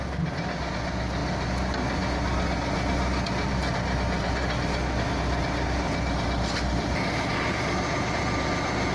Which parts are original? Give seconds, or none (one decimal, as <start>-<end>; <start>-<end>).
0.0-8.9

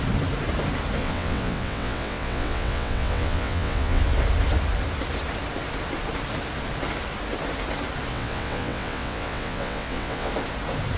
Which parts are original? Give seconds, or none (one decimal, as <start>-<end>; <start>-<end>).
0.0-1.0; 4.0-8.1; 10.3-11.0